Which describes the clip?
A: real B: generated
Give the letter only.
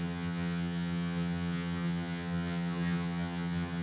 B